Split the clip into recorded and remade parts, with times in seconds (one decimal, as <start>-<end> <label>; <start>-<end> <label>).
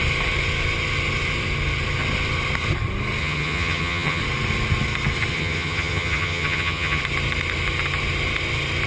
0.0-3.2 recorded; 3.2-4.2 remade; 4.2-5.3 recorded; 5.3-7.0 remade; 7.0-8.9 recorded